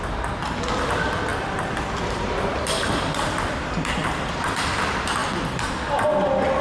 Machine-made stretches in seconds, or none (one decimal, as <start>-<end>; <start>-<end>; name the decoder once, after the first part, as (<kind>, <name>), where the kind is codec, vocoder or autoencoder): none